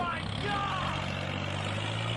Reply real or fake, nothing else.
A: real